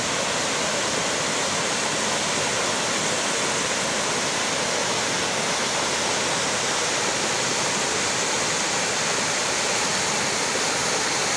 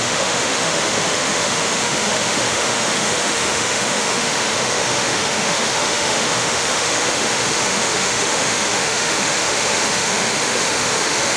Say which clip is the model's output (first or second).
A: second